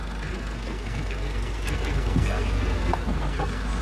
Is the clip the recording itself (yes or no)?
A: no